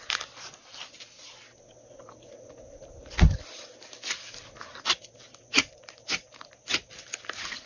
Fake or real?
real